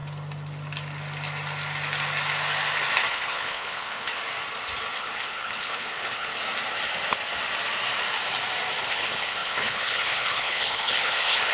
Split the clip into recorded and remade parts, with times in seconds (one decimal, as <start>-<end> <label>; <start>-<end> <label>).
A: 0.0-3.1 recorded; 3.1-4.2 remade; 4.2-5.0 recorded; 5.0-6.4 remade; 6.4-8.8 recorded; 8.8-11.5 remade